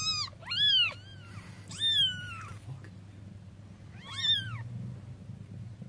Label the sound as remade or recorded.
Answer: recorded